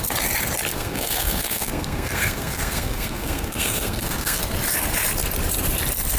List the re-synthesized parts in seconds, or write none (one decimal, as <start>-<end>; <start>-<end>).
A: 0.7-4.4